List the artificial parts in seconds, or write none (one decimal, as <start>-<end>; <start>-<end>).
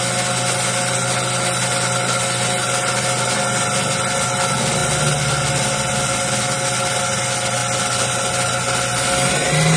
none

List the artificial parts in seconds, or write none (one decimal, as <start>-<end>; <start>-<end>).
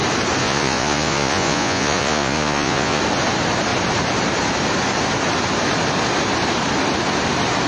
0.4-3.0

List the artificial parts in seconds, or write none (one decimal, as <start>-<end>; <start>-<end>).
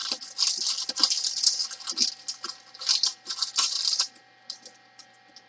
none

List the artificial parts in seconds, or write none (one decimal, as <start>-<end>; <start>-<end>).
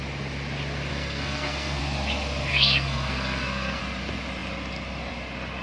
0.9-1.8; 2.5-3.8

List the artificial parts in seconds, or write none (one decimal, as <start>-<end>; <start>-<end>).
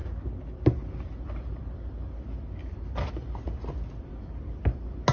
none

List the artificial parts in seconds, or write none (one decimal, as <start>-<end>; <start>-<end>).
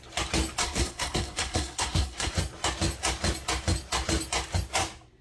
0.6-2.3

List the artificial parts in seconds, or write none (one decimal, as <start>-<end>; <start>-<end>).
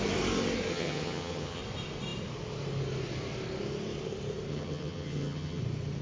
0.7-1.6; 4.5-5.6